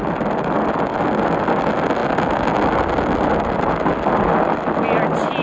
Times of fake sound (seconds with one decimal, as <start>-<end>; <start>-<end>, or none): none